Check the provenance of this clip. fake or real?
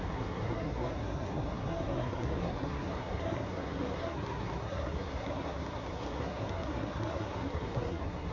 fake